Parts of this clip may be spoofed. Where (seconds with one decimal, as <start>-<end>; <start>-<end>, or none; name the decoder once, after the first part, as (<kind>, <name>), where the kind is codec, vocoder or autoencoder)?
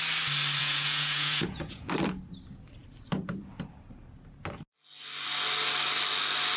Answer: 0.6-1.9 (vocoder, Vocos)